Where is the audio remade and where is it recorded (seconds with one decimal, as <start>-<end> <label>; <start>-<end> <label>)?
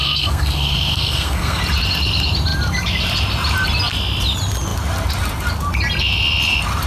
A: 0.0-1.6 remade; 1.6-6.9 recorded